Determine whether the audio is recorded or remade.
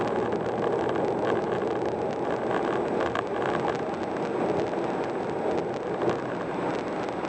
recorded